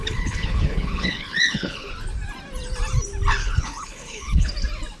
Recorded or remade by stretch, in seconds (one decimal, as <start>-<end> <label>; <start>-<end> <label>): 0.0-1.9 remade; 1.9-3.4 recorded; 3.4-4.5 remade; 4.5-5.0 recorded